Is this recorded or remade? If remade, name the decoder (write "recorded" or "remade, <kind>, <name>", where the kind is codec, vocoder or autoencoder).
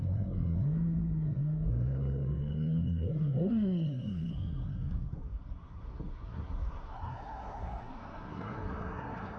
remade, codec, SNAC